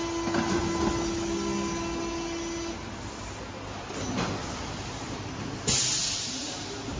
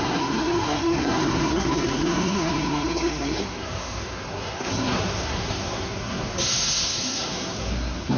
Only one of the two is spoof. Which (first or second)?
second